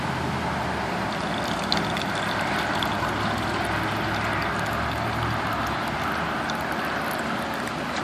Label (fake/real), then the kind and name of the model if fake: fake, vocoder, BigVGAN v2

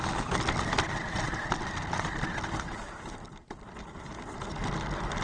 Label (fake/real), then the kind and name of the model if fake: real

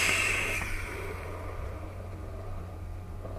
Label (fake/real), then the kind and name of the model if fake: fake, vocoder, BigVGAN v2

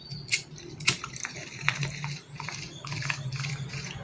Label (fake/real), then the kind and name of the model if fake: fake, vocoder, BigVGAN v2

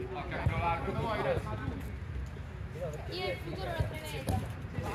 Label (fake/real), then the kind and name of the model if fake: real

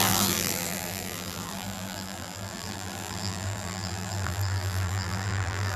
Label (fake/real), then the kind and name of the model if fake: fake, vocoder, BigVGAN v2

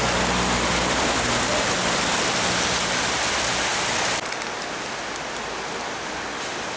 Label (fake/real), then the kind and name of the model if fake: real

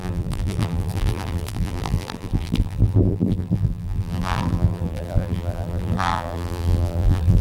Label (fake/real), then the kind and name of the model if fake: fake, vocoder, BigVGAN v2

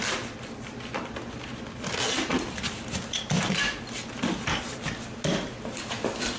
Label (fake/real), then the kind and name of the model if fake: real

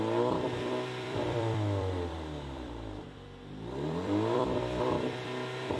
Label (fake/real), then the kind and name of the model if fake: fake, vocoder, BigVGAN v2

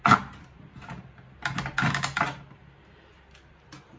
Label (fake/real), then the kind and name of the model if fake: real